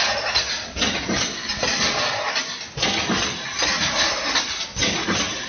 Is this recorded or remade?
recorded